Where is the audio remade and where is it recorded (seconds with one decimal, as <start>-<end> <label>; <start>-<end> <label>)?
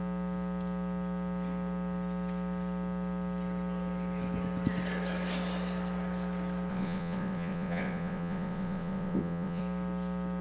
0.0-6.7 recorded; 6.7-9.6 remade; 9.6-10.4 recorded